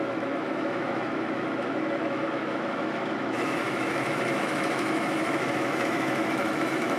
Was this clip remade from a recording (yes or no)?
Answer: yes